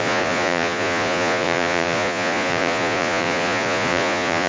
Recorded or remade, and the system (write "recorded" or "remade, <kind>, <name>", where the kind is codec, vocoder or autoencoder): remade, vocoder, Vocos